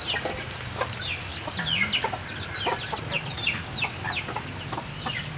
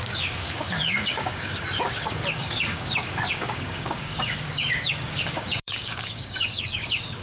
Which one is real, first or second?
first